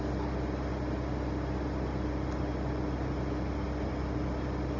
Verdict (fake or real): real